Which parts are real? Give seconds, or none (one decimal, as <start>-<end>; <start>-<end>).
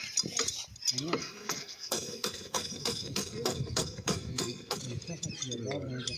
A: 0.0-1.2; 4.8-6.2